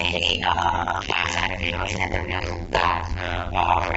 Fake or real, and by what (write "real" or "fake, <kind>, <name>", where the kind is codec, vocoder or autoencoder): fake, vocoder, BigVGAN v2